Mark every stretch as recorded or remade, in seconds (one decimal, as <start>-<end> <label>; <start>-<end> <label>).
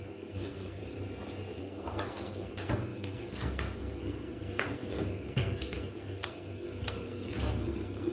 0.0-0.8 remade; 0.8-1.6 recorded; 1.6-8.1 remade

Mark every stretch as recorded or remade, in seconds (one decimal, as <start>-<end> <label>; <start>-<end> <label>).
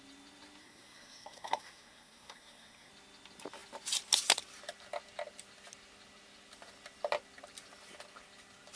0.0-0.6 recorded; 0.6-2.9 remade; 2.9-8.8 recorded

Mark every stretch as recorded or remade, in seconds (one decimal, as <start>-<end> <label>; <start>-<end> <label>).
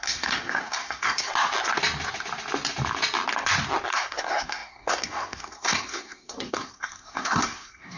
0.0-1.3 remade; 1.3-3.9 recorded; 3.9-8.0 remade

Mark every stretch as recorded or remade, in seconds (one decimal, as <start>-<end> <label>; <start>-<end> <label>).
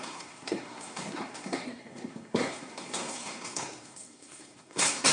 0.0-5.1 remade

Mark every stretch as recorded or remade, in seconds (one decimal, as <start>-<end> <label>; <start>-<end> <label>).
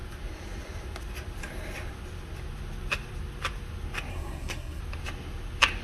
0.0-4.1 recorded; 4.1-4.8 remade; 4.8-5.8 recorded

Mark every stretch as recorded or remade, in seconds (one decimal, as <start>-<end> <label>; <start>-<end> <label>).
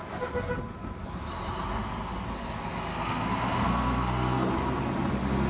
0.0-2.9 recorded; 2.9-4.5 remade; 4.5-5.5 recorded